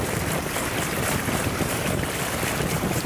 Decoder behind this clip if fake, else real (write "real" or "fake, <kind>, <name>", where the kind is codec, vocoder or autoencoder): fake, vocoder, BigVGAN v2